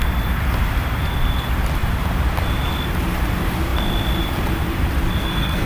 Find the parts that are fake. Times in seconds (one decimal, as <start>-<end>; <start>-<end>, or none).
5.2-5.7